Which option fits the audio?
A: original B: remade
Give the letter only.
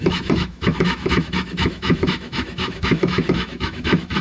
B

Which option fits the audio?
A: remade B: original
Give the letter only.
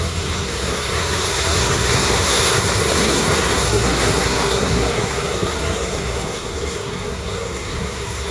A